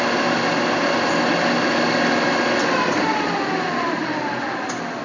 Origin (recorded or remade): recorded